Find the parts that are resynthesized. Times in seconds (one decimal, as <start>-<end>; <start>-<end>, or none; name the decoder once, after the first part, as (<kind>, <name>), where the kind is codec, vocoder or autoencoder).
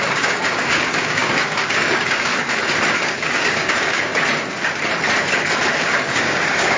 0.0-2.3 (codec, DAC); 3.0-4.1; 5.8-6.8